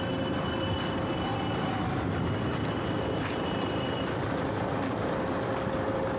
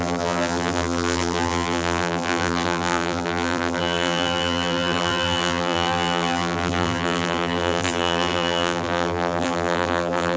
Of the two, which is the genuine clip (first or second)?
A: first